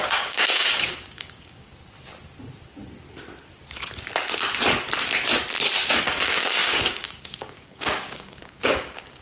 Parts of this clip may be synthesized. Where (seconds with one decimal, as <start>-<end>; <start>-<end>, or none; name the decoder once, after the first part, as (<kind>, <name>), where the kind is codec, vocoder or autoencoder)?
0.0-1.7 (codec, DAC); 5.9-9.2